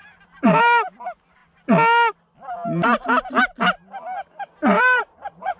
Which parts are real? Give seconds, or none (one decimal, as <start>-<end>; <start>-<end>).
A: 1.4-4.8